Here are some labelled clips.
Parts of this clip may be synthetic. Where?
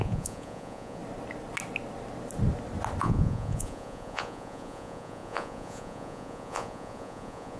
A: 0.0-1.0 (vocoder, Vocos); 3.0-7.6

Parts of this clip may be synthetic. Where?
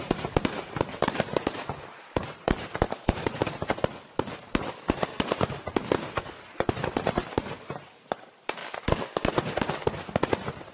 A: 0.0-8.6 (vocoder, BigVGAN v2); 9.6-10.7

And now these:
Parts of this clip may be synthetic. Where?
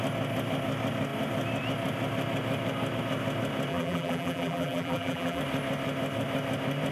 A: 3.7-5.4 (vocoder, BigVGAN v2)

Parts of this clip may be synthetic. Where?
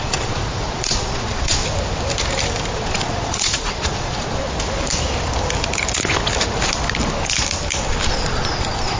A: 0.0-1.6 (vocoder, Vocos); 2.8-4.4; 8.1-9.0